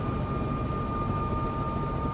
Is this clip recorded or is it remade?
recorded